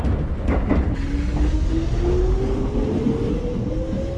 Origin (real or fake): real